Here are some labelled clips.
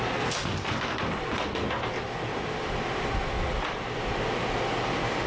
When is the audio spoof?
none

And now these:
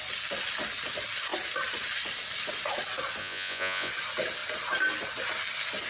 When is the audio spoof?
3.2-3.9 (vocoder, Vocos)

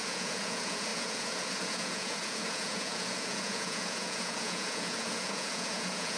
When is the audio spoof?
0.0-6.2 (vocoder, Vocos)

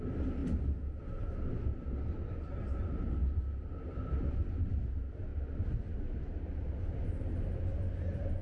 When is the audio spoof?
none

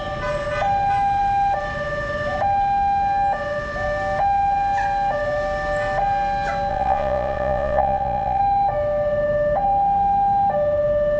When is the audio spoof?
6.7-8.4 (vocoder, Vocos)

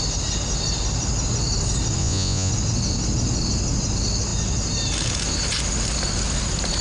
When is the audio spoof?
2.0-2.5 (vocoder, Vocos)

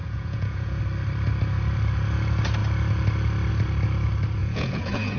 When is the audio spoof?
0.0-0.8 (vocoder, Vocos); 4.4-5.2